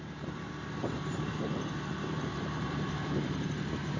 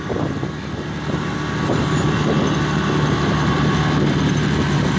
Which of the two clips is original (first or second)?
second